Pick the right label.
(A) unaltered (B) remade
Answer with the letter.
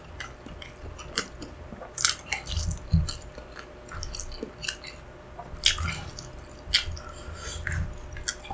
A